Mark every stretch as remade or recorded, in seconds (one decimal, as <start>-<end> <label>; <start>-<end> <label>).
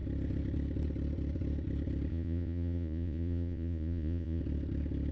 0.0-2.1 recorded; 2.1-4.4 remade; 4.4-5.1 recorded